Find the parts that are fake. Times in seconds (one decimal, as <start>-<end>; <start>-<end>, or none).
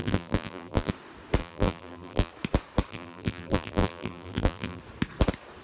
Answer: 0.0-0.9; 1.4-2.3; 2.9-4.8